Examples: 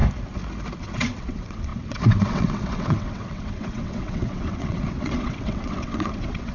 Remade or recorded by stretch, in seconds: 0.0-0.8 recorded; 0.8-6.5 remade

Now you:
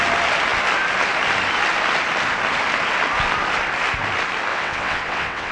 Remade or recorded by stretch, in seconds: 0.0-4.5 recorded; 4.5-5.5 remade